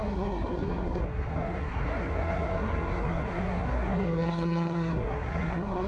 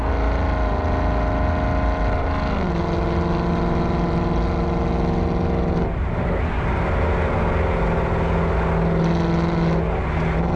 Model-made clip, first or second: first